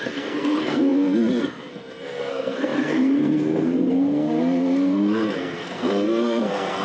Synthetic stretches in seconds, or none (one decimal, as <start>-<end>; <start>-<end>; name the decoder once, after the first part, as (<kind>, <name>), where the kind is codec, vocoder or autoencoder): 0.0-6.8 (codec, SNAC)